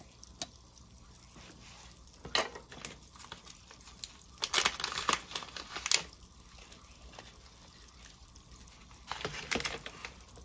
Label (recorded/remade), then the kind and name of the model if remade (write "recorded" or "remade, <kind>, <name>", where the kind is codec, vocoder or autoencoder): recorded